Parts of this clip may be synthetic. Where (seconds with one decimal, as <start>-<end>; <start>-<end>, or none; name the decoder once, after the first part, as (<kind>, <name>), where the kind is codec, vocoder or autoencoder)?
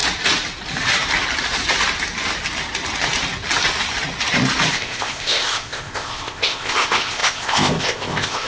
4.7-8.5 (codec, ZipCodec)